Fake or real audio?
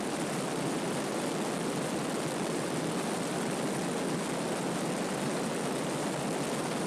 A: real